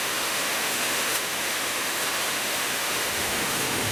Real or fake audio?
fake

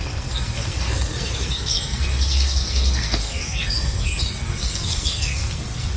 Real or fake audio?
fake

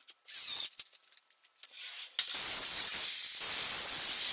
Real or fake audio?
real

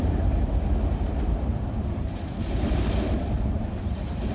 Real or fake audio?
fake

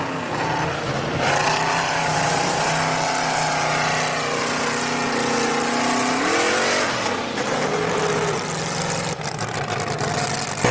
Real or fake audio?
real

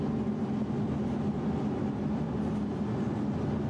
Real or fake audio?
real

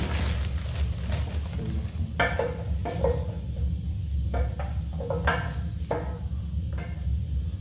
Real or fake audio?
real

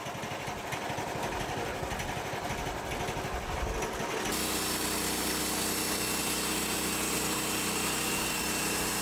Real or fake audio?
real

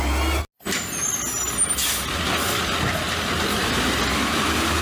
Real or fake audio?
real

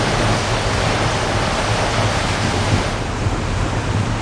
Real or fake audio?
real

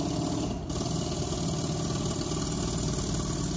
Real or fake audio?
real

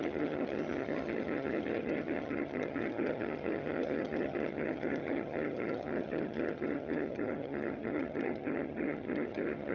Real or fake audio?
fake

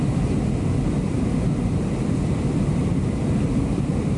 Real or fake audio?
real